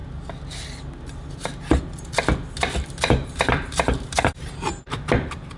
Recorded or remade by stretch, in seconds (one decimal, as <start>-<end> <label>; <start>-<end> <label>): 0.0-3.4 recorded; 3.4-5.6 remade